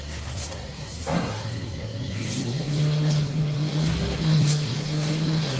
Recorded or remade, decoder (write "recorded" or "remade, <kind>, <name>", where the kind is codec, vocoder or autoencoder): remade, codec, SNAC